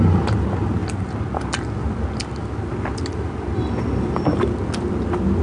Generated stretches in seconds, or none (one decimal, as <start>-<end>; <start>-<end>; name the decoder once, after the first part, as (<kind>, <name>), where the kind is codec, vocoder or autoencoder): none